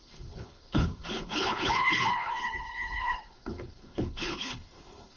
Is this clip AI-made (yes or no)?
yes